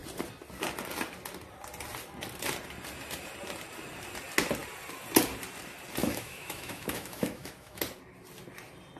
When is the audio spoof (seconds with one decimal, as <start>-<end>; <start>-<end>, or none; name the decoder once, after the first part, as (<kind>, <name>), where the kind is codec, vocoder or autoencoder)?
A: 6.0-7.8 (autoencoder, DAC-VAE)